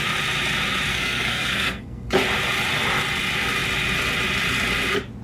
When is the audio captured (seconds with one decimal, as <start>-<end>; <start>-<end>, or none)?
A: 0.0-0.9; 2.1-5.2